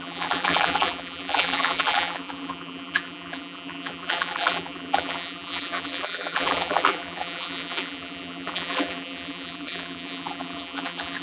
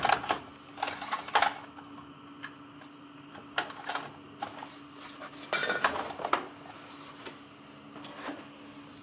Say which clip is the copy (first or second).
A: first